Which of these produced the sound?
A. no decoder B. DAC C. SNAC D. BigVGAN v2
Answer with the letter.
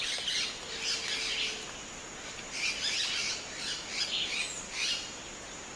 A